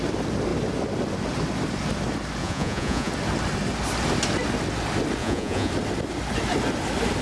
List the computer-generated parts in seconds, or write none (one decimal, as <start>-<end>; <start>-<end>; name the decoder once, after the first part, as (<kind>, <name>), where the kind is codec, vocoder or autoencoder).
2.4-3.1 (vocoder, Vocos); 5.2-5.7